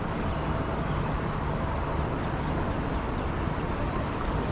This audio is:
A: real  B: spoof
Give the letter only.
A